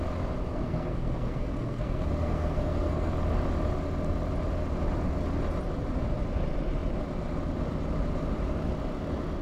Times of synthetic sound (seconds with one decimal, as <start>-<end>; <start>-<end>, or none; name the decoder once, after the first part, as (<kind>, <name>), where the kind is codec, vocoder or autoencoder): 0.5-3.1 (codec, SNAC)